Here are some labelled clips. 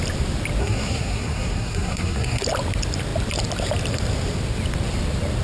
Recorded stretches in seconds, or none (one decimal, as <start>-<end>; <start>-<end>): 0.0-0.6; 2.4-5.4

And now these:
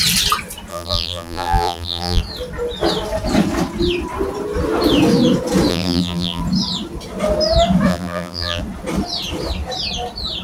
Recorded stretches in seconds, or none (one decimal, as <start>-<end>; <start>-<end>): 0.0-0.7; 2.2-5.7; 6.4-7.9; 8.6-10.4

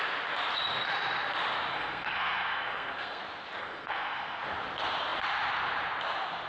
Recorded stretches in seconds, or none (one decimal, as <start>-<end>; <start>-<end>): 0.0-1.7; 3.2-3.6; 4.4-6.5

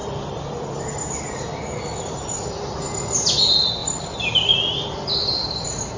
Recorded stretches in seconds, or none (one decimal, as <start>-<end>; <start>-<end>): 0.0-6.0